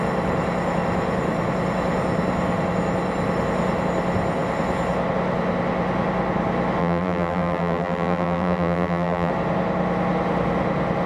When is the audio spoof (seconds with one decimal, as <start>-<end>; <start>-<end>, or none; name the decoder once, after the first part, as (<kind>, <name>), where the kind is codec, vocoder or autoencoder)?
6.8-9.3 (vocoder, BigVGAN v2)